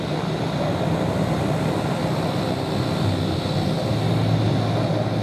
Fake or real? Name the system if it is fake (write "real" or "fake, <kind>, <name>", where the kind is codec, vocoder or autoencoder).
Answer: real